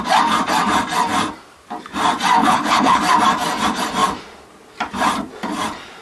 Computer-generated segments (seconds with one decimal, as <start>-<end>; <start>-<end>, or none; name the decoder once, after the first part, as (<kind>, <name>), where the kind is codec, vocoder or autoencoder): 2.4-3.0 (codec, HILCodec)